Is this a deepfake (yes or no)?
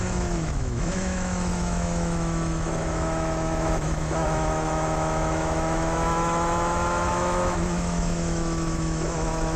yes